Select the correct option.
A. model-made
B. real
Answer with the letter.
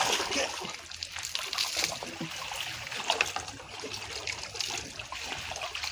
B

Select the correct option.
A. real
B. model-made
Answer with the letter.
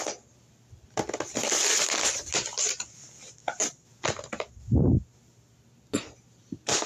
A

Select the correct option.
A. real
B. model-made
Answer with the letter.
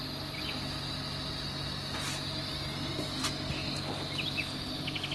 A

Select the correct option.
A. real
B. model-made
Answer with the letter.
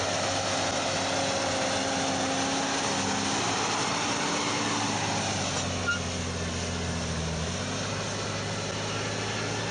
A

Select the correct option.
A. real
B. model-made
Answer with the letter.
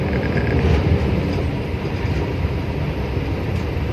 A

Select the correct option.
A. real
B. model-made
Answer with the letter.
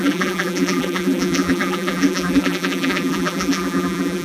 B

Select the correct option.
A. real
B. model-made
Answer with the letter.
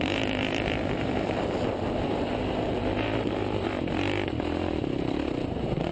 B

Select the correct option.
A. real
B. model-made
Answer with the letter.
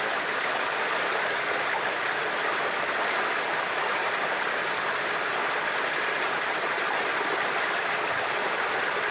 A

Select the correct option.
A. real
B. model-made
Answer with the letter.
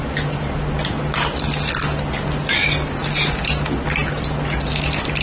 A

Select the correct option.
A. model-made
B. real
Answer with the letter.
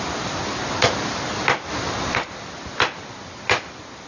A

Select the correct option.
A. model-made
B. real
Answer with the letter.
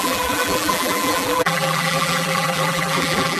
A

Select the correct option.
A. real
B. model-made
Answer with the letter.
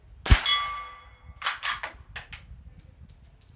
A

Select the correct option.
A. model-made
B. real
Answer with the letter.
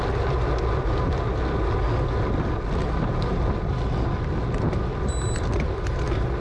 B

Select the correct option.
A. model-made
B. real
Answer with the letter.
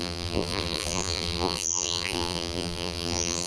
A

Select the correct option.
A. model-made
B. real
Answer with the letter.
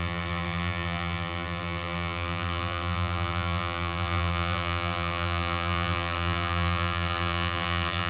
A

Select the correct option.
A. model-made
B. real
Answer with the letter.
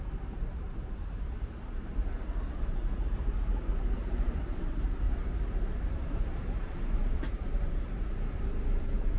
A